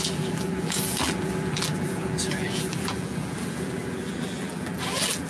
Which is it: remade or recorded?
remade